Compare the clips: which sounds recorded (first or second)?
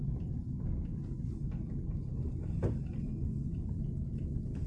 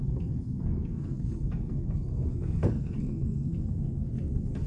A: first